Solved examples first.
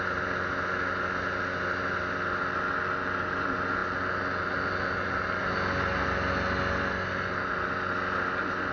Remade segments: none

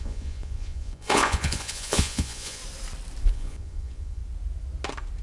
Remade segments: 0.0-2.6 (vocoder, Vocos); 3.3-4.2

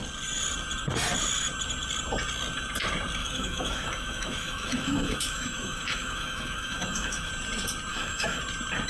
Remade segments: 3.2-7.3 (autoencoder, DAC-VAE); 7.9-8.4

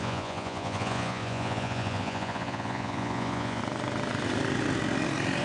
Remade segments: 0.0-3.6 (vocoder, Vocos)

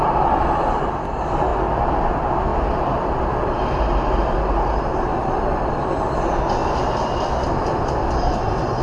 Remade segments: none

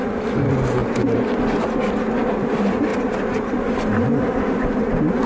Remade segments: none

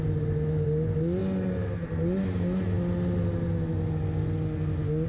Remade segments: none

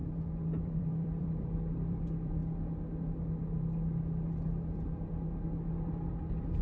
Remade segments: 0.6-2.4 (vocoder, BigVGAN v2)